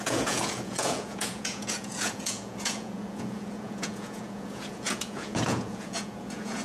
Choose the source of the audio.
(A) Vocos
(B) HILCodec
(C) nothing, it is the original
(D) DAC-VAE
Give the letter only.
A